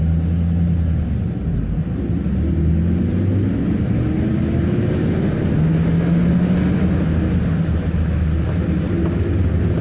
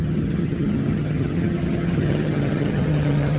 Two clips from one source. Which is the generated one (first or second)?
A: second